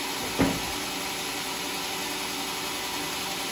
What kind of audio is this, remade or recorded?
recorded